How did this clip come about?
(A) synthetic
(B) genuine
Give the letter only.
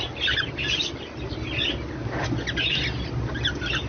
B